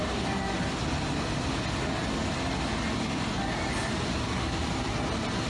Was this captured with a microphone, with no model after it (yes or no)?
yes